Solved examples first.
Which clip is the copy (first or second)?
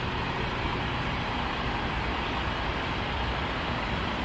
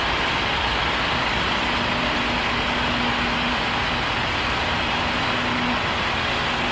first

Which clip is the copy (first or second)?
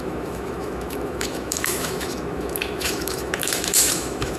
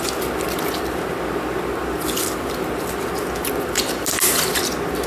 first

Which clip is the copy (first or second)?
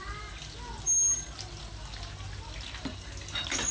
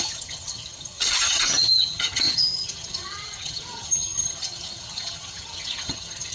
second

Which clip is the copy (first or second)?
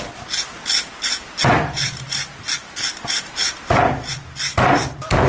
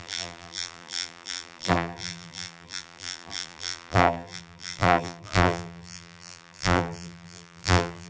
second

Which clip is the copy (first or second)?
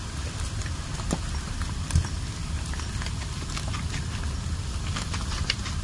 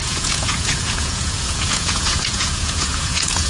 second